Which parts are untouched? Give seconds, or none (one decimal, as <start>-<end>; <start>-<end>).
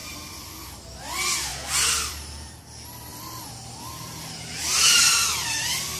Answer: 0.5-3.1; 5.0-6.0